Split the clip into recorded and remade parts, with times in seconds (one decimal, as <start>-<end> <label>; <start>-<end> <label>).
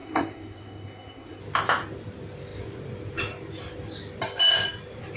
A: 0.0-1.4 remade; 1.4-5.2 recorded